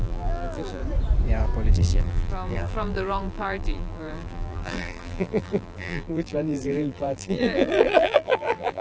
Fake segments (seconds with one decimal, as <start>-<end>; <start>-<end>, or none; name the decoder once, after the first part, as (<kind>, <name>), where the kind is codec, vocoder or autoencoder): 0.0-0.8 (vocoder, BigVGAN v2); 1.7-8.8